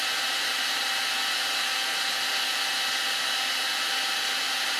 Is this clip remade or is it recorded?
recorded